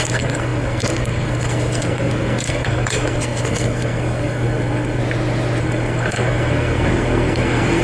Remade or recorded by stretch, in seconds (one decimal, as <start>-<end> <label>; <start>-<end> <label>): 0.0-5.0 remade; 5.0-5.6 recorded; 5.6-7.8 remade